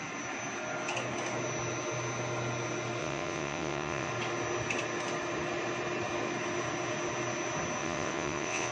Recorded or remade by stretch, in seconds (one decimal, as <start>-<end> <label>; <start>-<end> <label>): 0.0-3.0 recorded; 3.0-4.1 remade; 4.1-7.8 recorded; 7.8-8.7 remade